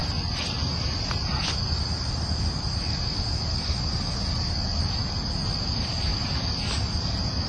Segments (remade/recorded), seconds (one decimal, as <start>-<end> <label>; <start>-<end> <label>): 0.0-7.5 recorded